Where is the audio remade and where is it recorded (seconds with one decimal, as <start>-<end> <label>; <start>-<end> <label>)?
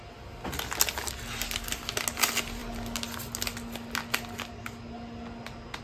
0.0-5.8 recorded